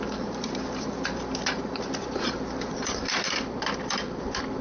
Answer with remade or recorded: recorded